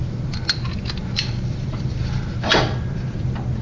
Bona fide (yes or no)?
yes